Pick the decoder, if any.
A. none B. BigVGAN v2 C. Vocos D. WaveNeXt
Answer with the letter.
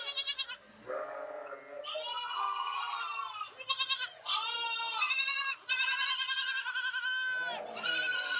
A